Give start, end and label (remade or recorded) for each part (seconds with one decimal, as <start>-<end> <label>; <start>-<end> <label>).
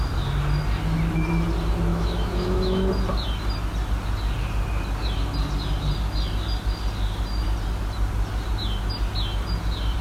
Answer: 0.0-1.9 recorded; 1.9-2.9 remade; 2.9-10.0 recorded